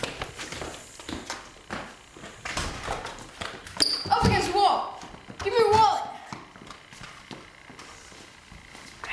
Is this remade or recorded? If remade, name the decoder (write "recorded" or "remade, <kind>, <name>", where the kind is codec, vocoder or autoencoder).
recorded